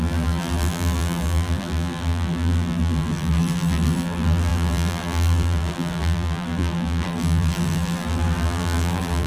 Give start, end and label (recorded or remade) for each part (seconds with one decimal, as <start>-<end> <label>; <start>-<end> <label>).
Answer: 0.0-9.3 remade